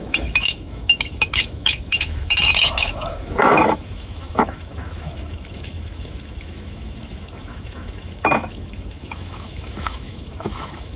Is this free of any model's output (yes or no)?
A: no